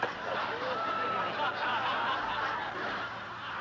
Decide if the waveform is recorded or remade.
recorded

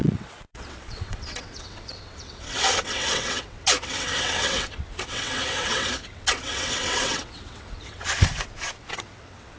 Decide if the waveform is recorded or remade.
remade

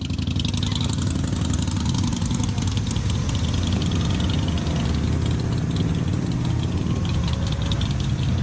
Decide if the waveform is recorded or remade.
recorded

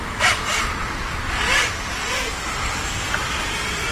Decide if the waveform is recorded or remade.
recorded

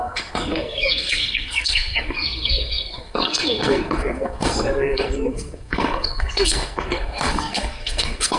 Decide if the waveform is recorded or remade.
remade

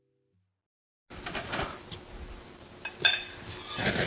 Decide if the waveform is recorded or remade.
recorded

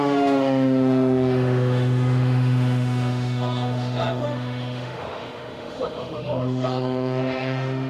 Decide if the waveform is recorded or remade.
remade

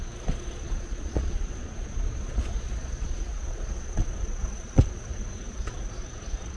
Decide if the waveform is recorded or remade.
remade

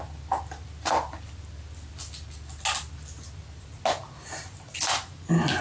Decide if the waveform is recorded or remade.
recorded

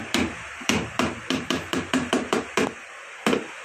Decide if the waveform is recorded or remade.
remade